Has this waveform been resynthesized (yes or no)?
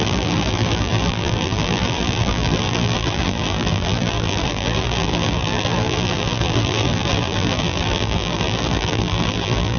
yes